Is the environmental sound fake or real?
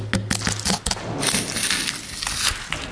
real